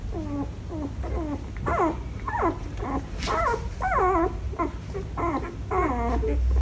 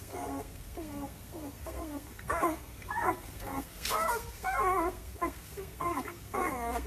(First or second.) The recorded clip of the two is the first